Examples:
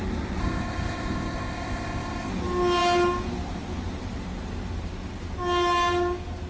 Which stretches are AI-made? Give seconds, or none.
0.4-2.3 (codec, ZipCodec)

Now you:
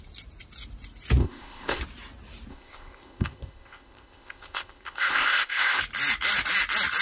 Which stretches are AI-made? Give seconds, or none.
1.2-1.8 (codec, ZipCodec); 2.5-5.8

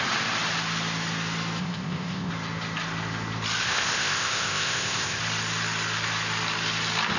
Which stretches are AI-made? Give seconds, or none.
1.6-2.3 (codec, ZipCodec); 3.6-5.2